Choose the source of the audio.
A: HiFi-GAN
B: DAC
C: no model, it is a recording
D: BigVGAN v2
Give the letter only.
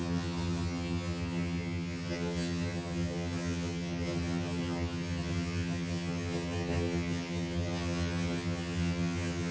A